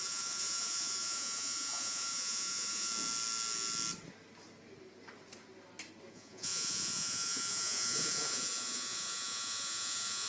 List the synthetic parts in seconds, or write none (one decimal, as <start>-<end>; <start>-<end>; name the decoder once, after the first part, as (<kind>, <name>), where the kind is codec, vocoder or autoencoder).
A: 0.0-2.9 (vocoder, Vocos); 6.1-10.3